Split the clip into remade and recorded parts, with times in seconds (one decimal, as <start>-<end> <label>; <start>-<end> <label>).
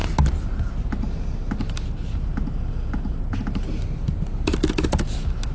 0.0-5.5 recorded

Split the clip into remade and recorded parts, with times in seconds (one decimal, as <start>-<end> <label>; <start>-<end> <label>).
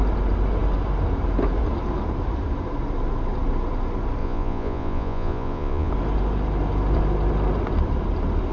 0.0-4.2 recorded; 4.2-5.9 remade; 5.9-8.5 recorded